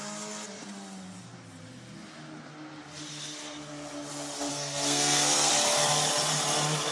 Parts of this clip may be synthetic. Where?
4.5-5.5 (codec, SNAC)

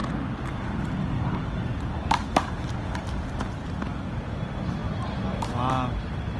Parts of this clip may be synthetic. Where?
none

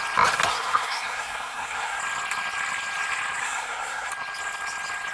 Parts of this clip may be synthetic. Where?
0.5-2.0 (codec, SNAC); 3.4-4.1

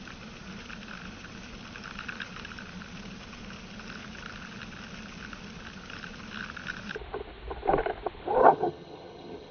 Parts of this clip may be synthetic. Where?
8.4-9.5 (vocoder, HiFi-GAN)

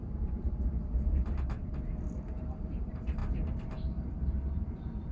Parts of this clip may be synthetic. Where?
0.0-5.1 (vocoder, BigVGAN v2)

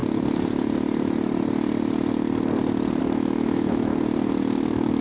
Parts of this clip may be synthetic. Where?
3.0-3.9 (autoencoder, DAC-VAE); 4.5-5.0

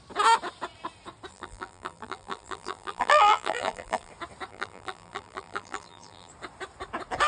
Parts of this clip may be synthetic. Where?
1.3-4.1 (vocoder, BigVGAN v2); 4.5-6.3